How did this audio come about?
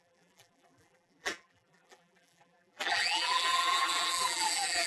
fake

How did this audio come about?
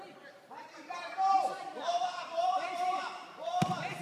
fake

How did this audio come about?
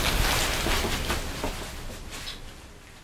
real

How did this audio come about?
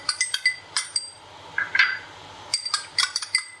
fake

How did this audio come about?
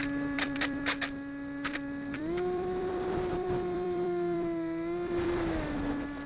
fake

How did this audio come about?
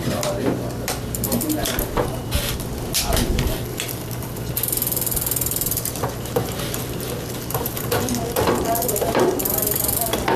fake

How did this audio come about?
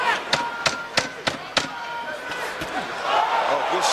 real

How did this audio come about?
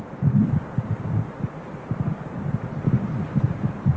fake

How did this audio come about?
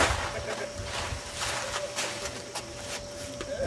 real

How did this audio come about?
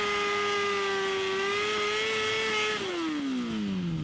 real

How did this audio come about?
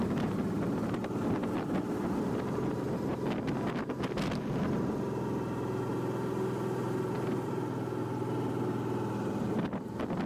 real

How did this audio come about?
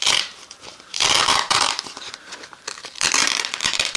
fake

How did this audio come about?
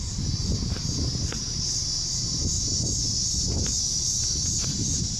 fake